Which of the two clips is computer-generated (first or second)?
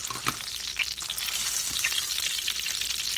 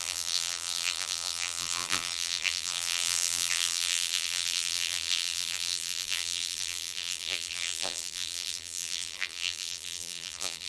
second